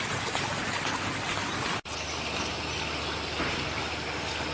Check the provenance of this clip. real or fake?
real